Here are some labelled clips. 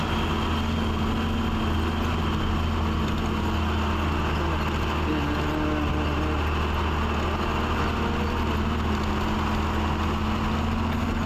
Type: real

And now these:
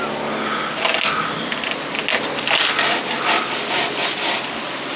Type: real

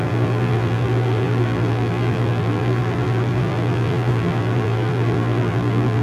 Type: fake